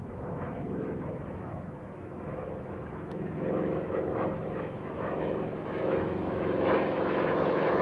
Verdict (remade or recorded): remade